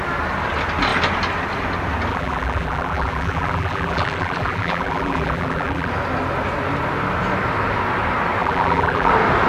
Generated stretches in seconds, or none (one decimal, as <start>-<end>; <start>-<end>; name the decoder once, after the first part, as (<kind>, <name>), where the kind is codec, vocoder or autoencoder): 2.1-5.9 (vocoder, BigVGAN v2); 8.4-9.1